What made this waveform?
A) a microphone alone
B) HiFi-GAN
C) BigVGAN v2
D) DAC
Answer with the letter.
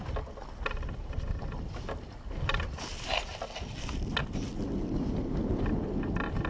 A